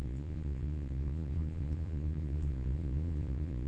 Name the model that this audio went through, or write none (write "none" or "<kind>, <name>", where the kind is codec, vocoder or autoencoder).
vocoder, Vocos